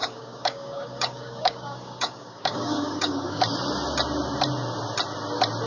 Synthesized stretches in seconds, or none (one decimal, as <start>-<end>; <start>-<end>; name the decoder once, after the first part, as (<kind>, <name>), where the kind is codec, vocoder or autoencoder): 0.0-3.4 (codec, DAC)